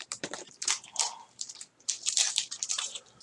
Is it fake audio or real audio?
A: fake